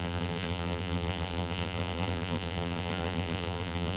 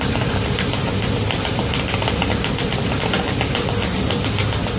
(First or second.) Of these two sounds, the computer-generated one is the first